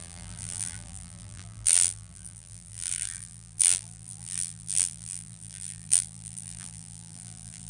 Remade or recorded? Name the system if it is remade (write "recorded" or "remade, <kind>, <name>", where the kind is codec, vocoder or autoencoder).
remade, vocoder, BigVGAN v2